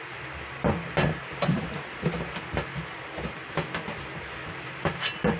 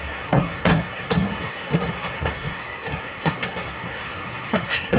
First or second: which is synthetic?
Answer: second